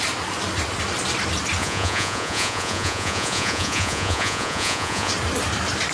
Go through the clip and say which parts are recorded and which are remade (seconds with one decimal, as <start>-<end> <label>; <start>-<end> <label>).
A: 0.0-1.6 recorded; 1.6-5.1 remade; 5.1-5.9 recorded